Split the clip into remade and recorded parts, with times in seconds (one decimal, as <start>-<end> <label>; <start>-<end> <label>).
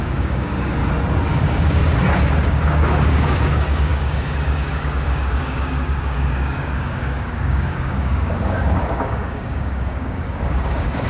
0.0-0.8 remade; 0.8-1.3 recorded; 1.3-1.8 remade; 1.8-2.5 recorded; 2.5-11.1 remade